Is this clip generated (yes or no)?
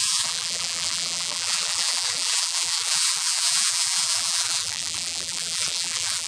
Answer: yes